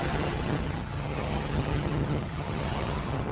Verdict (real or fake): fake